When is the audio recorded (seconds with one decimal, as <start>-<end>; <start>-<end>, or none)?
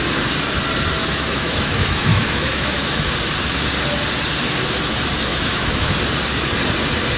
0.0-1.0; 3.1-5.3; 5.9-7.2